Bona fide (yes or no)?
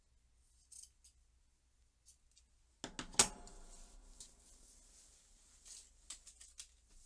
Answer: yes